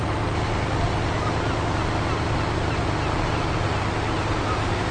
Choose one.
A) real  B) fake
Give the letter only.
A